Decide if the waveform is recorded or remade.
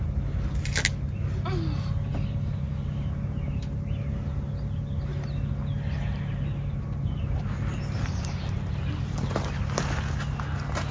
recorded